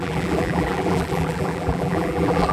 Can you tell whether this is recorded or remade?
remade